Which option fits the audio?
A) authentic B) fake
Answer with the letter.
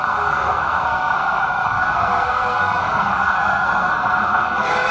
B